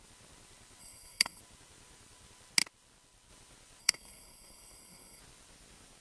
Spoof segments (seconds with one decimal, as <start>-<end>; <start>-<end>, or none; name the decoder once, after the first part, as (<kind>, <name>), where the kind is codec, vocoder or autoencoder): 0.8-1.4 (codec, SNAC); 3.8-5.2